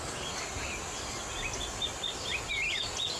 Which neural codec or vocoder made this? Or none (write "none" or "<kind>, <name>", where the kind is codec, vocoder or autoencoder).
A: none